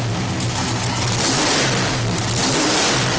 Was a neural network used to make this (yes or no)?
no